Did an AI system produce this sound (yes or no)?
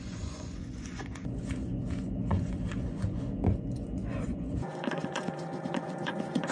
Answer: yes